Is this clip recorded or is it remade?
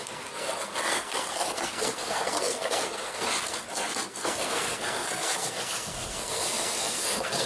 remade